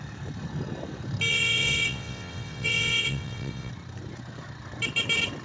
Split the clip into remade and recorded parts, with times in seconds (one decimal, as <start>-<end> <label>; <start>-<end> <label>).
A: 0.0-1.3 recorded; 1.3-3.7 remade; 3.7-5.4 recorded